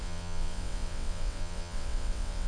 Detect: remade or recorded remade